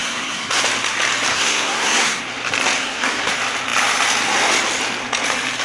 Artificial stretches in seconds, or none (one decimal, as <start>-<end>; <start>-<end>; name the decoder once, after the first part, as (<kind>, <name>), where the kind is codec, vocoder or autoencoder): 0.0-0.6 (codec, SNAC); 1.3-2.2; 2.8-3.3